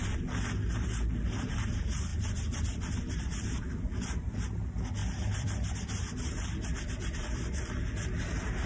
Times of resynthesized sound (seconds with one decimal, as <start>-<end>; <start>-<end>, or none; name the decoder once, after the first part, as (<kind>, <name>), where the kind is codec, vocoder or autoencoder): 5.0-6.1 (vocoder, BigVGAN v2); 6.7-7.5